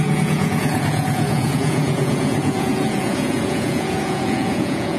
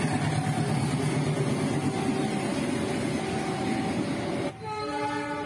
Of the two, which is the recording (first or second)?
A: second